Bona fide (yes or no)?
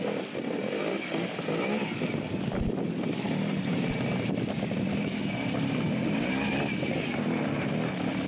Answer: yes